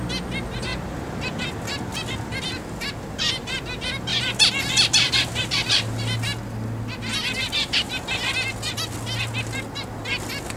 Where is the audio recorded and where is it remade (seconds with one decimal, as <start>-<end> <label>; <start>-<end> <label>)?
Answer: 0.0-0.7 recorded; 0.7-1.4 remade; 1.4-1.9 recorded; 1.9-2.8 remade; 2.8-4.1 recorded; 4.1-5.7 remade; 5.7-10.6 recorded